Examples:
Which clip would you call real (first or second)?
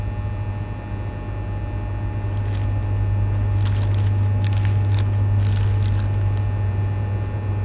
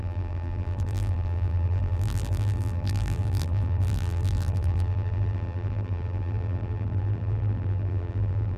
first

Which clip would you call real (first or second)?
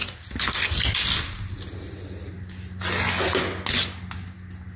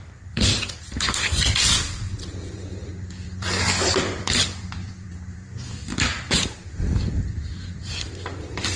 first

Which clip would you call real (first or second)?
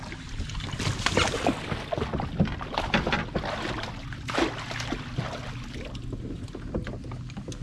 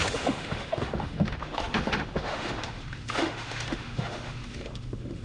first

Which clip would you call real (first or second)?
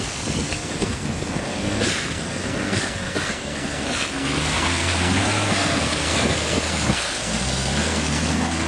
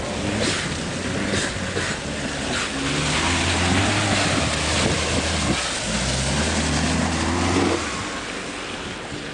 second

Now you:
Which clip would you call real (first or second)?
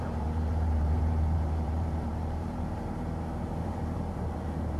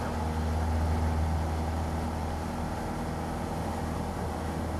second